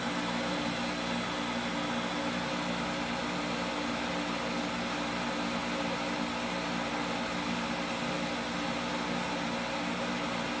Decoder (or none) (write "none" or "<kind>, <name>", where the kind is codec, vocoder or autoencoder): none